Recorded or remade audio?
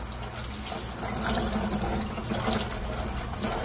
recorded